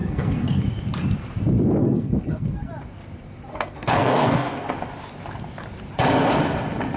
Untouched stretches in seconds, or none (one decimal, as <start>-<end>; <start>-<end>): 0.6-1.8; 2.7-3.5; 4.8-7.0